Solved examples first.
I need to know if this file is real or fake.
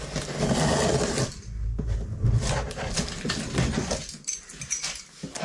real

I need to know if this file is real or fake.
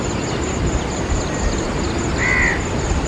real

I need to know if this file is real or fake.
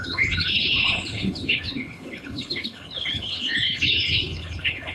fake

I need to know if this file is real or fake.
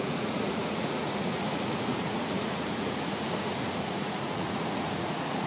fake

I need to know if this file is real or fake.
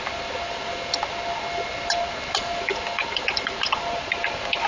real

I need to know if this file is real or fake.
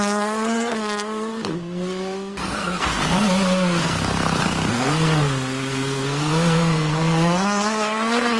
fake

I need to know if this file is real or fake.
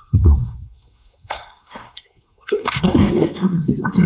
fake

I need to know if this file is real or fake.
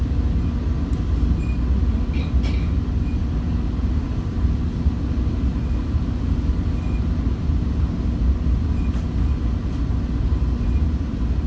real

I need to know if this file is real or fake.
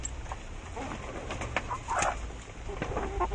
real